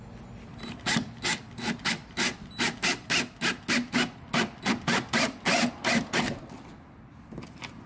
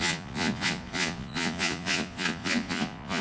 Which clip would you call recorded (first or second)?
first